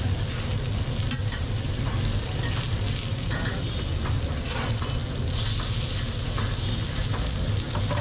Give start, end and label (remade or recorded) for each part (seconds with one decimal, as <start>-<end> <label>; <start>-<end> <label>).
0.0-1.2 recorded; 1.2-1.8 remade; 1.8-8.0 recorded